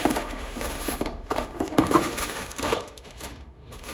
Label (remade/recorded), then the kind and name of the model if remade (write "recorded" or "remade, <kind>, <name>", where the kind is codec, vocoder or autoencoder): remade, autoencoder, DAC-VAE